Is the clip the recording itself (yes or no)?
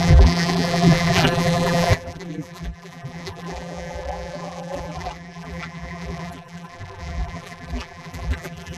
no